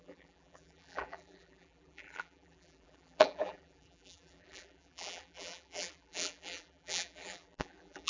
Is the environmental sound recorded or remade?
remade